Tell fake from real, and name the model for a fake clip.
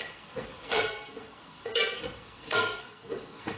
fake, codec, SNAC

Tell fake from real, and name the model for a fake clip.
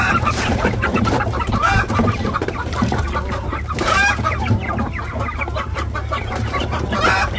fake, vocoder, BigVGAN v2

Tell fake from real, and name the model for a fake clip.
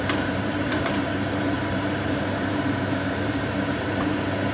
fake, vocoder, BigVGAN v2